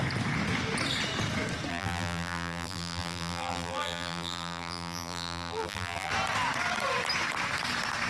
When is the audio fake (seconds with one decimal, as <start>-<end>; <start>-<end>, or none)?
1.7-6.1